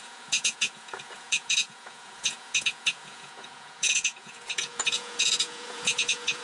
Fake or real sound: fake